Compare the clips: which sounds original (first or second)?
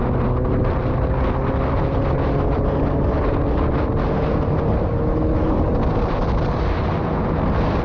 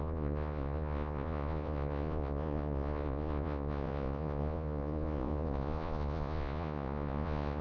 first